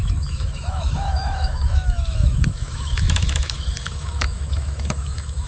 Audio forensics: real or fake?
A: fake